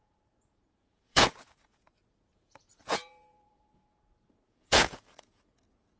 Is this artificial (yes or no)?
yes